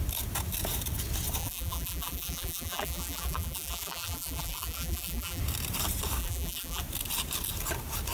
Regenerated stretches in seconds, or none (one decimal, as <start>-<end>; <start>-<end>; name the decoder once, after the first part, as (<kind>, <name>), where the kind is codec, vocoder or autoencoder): 1.4-5.4 (vocoder, BigVGAN v2); 6.2-6.8